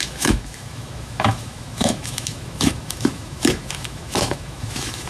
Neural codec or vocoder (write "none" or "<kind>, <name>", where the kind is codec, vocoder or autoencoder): autoencoder, DAC-VAE